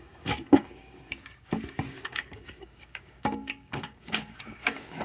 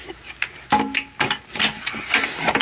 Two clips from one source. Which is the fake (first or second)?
first